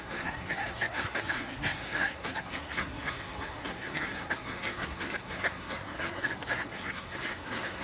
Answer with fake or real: fake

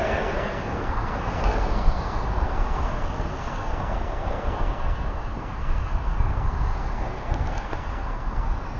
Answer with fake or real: fake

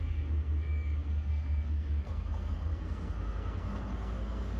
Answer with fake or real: fake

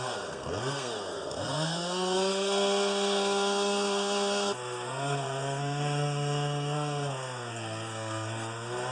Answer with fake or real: fake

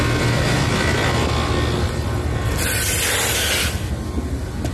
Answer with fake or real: real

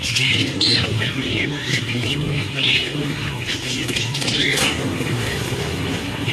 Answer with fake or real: fake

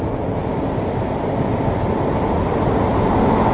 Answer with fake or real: real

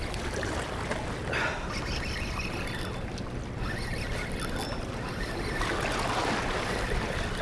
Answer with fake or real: real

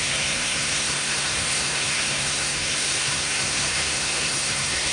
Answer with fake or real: fake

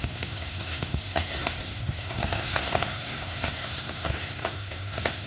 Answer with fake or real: fake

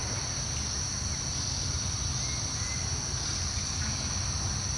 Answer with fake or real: real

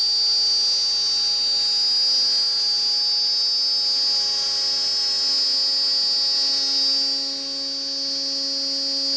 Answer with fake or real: real